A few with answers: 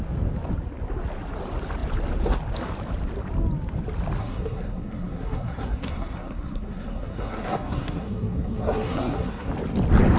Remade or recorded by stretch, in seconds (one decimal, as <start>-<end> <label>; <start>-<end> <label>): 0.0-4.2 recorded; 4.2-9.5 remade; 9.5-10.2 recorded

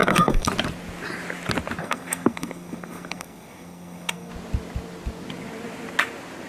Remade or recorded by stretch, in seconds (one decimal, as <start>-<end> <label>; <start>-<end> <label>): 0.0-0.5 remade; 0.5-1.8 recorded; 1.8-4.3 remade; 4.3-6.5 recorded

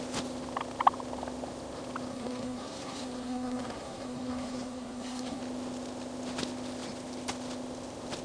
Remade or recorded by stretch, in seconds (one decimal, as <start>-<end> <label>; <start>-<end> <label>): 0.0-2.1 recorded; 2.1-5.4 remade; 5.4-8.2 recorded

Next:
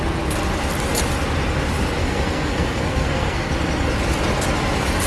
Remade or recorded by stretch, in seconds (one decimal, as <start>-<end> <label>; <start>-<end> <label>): 0.0-2.0 recorded; 2.0-3.5 remade; 3.5-5.1 recorded

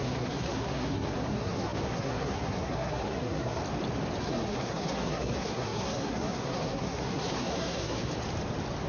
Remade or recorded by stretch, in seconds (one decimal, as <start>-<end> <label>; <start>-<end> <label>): 0.0-3.6 remade; 3.6-4.2 recorded; 4.2-8.1 remade; 8.1-8.9 recorded